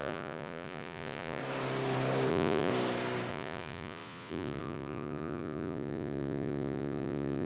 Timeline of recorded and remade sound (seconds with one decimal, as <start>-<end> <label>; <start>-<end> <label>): 0.0-1.4 remade; 1.4-2.3 recorded; 2.3-2.7 remade; 2.7-3.3 recorded; 3.3-7.5 remade